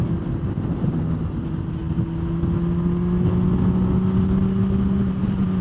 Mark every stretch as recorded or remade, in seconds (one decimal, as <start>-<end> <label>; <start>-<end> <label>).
0.0-5.0 recorded; 5.0-5.6 remade